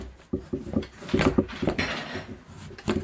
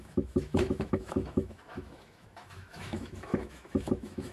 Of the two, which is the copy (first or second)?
second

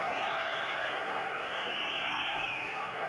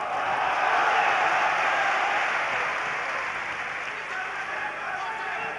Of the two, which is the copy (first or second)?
first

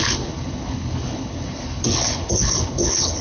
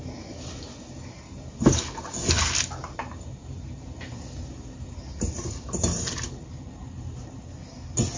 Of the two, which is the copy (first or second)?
first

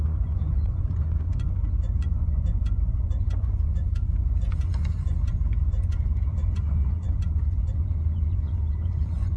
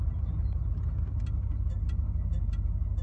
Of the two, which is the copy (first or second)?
first